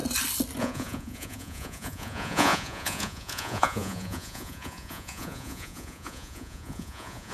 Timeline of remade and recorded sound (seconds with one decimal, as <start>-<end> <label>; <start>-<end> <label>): 0.0-0.6 recorded; 0.6-7.3 remade